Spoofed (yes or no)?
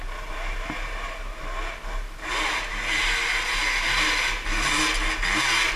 no